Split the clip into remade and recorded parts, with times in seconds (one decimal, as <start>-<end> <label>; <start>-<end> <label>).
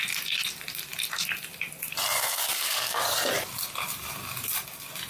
0.0-2.2 recorded; 2.2-3.0 remade; 3.0-5.1 recorded